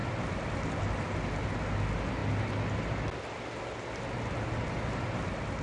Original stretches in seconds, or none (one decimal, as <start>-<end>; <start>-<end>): 0.0-5.6